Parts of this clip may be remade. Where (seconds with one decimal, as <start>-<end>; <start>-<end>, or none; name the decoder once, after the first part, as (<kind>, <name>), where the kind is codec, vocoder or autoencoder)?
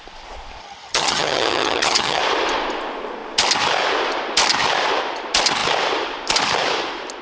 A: 0.6-2.2 (vocoder, HiFi-GAN)